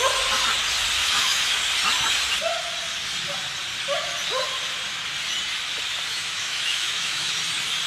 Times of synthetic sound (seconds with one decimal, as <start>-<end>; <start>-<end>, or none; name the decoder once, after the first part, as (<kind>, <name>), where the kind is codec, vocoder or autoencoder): 1.0-1.6 (autoencoder, DAC-VAE); 6.1-7.4